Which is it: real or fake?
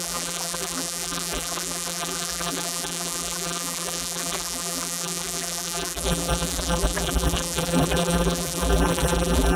fake